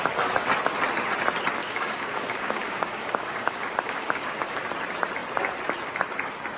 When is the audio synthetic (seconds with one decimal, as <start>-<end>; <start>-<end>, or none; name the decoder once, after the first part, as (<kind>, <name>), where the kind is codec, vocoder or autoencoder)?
1.6-4.6 (codec, DAC)